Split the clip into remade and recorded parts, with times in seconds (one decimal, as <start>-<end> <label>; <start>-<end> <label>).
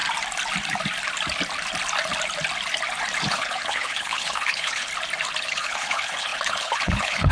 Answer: 0.0-3.3 recorded; 3.3-4.9 remade; 4.9-5.4 recorded; 5.4-7.3 remade